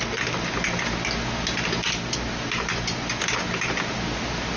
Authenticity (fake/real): real